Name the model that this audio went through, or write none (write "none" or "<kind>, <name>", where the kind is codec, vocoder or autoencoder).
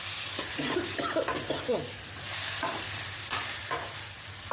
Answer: vocoder, BigVGAN v2